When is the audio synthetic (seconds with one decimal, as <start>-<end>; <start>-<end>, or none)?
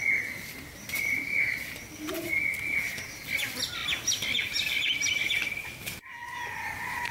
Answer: none